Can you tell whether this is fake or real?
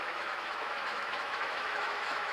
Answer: fake